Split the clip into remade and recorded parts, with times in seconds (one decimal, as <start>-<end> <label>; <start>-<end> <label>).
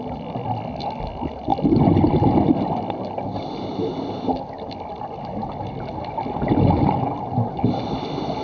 0.0-8.4 recorded